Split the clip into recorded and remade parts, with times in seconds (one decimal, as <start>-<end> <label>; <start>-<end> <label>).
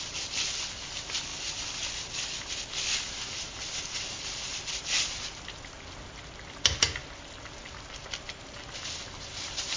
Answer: 0.0-1.3 remade; 1.3-6.2 recorded; 6.2-7.0 remade; 7.0-8.6 recorded; 8.6-9.8 remade